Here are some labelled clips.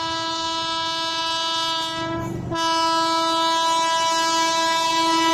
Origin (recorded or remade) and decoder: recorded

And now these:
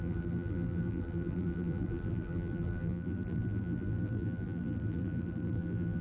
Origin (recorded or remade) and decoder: remade, vocoder, BigVGAN v2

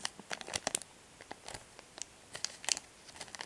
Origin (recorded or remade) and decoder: recorded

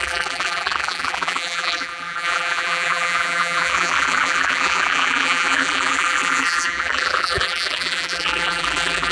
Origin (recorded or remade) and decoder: remade, vocoder, BigVGAN v2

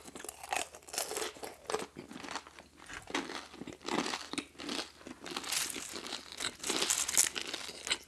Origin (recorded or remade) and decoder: recorded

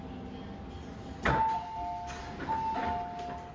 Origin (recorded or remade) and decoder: recorded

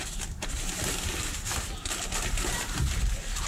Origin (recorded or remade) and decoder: recorded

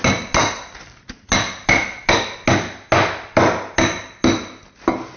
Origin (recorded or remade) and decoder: recorded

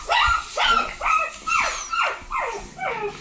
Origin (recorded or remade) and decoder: recorded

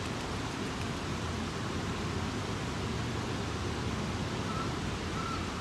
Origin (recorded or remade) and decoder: recorded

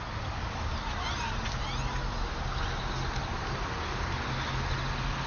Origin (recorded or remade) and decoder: recorded